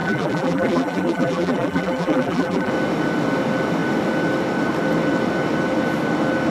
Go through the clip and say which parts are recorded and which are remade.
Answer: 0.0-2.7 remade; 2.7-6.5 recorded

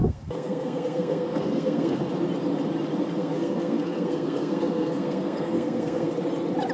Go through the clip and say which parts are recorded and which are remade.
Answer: 0.0-2.1 remade; 2.1-3.2 recorded; 3.2-6.1 remade; 6.1-6.7 recorded

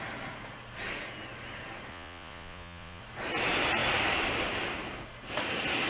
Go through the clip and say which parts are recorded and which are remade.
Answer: 0.0-1.9 recorded; 1.9-3.0 remade; 3.0-5.9 recorded

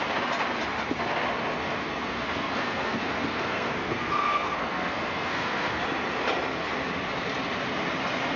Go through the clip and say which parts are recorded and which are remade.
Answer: 0.0-1.6 recorded; 1.6-5.8 remade; 5.8-8.4 recorded

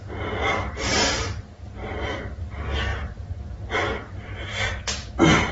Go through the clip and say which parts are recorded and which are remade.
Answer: 0.0-5.5 recorded